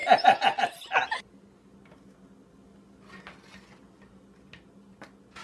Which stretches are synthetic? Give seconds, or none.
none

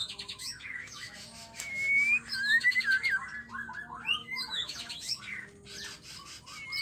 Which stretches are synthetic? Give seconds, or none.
0.0-2.8 (autoencoder, DAC-VAE); 4.2-5.2

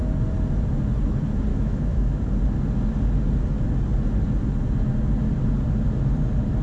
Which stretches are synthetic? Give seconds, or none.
1.5-2.2 (autoencoder, DAC-VAE)

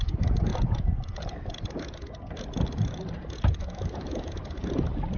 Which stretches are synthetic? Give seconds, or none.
0.0-0.5 (autoencoder, DAC-VAE); 3.6-4.4

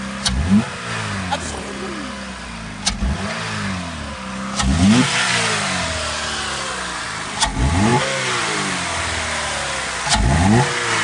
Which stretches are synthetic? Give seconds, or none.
none